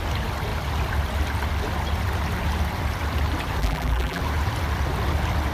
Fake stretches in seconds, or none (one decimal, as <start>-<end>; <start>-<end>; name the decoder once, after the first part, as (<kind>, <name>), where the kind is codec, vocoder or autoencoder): 3.6-4.2 (vocoder, BigVGAN v2)